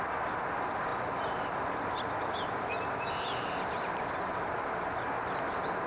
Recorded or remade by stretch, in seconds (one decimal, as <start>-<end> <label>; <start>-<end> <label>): 0.0-5.9 recorded